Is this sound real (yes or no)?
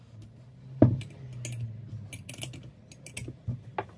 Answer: yes